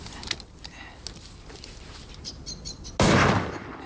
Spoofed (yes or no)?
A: no